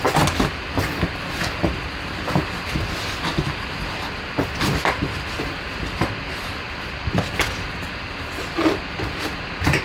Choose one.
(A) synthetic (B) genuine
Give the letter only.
B